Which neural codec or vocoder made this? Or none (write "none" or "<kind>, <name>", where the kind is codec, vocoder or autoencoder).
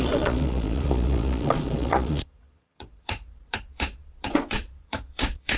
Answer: vocoder, Vocos